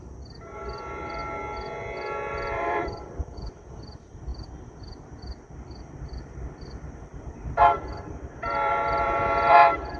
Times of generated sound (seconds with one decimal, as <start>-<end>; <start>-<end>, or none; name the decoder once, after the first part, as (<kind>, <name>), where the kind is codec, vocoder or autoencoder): 0.0-1.2 (vocoder, BigVGAN v2); 2.3-4.3; 5.8-10.0